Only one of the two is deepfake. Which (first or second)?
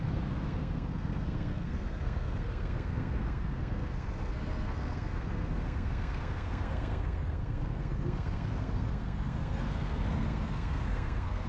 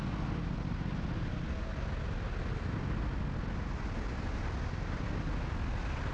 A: first